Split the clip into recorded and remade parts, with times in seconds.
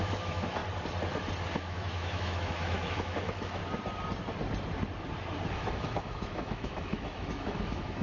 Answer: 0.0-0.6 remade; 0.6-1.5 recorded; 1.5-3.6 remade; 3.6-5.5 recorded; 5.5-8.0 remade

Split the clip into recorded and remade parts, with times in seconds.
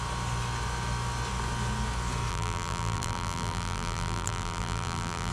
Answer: 0.0-2.3 recorded; 2.3-5.3 remade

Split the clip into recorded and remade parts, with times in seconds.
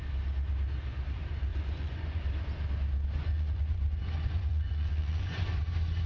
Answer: 0.0-1.5 recorded; 1.5-2.2 remade; 2.2-3.2 recorded; 3.2-5.6 remade; 5.6-6.1 recorded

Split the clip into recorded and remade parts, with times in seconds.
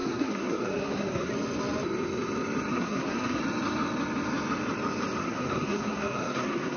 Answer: 0.0-1.3 remade; 1.3-2.7 recorded; 2.7-3.4 remade; 3.4-5.2 recorded; 5.2-6.8 remade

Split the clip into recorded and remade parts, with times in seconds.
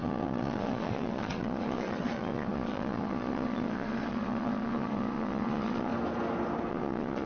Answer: 0.0-5.9 remade; 5.9-6.7 recorded; 6.7-7.3 remade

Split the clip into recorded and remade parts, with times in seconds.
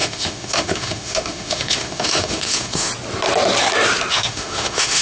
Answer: 0.0-2.9 remade; 2.9-4.1 recorded; 4.1-5.0 remade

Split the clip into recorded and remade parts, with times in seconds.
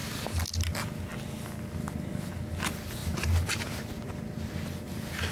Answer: 0.0-3.0 recorded; 3.0-3.8 remade; 3.8-5.3 recorded